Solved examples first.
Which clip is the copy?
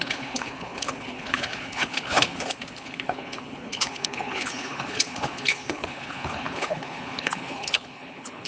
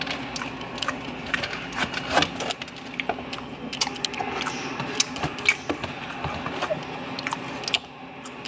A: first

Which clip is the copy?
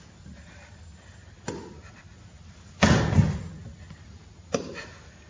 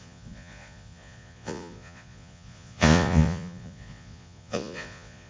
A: second